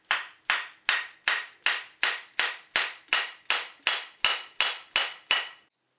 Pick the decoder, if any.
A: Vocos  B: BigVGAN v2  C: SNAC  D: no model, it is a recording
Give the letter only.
D